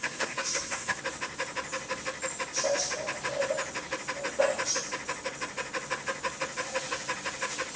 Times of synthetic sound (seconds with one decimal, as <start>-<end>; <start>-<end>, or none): 0.0-1.0